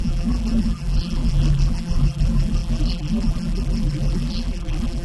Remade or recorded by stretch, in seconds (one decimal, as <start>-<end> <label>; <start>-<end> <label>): 0.0-5.0 remade